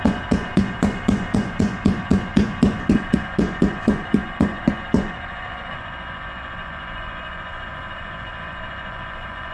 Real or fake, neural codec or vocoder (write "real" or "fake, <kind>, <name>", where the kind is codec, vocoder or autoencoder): fake, vocoder, Vocos